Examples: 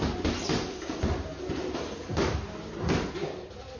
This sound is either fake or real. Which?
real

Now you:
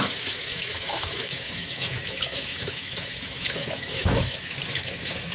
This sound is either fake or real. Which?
fake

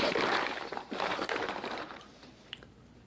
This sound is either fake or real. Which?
fake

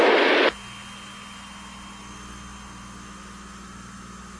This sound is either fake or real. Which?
real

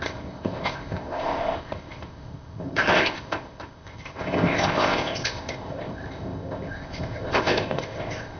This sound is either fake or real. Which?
fake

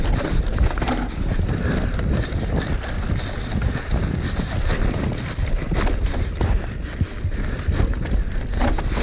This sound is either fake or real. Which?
real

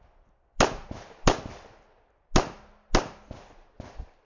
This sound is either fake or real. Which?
real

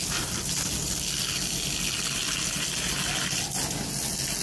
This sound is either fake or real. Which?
real